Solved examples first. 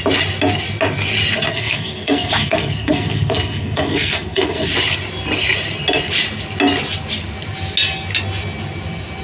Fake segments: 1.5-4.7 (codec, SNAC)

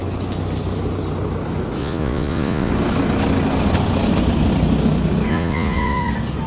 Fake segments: 1.8-2.7 (vocoder, Vocos); 5.3-6.1